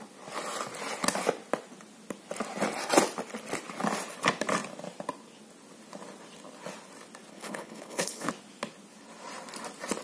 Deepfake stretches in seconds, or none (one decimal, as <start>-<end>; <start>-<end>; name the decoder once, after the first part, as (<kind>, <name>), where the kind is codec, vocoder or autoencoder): 7.3-8.3 (codec, HILCodec)